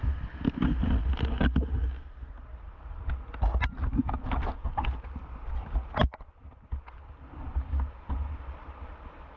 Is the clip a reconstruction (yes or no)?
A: no